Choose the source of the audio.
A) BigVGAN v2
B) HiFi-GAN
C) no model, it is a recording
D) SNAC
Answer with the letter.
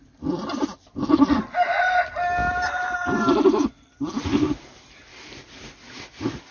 C